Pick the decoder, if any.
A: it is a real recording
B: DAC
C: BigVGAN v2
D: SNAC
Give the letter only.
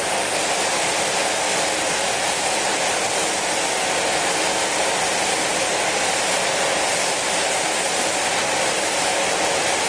A